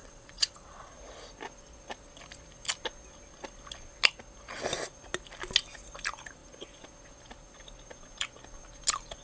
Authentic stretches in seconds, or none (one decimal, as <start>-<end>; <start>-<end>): 0.9-9.2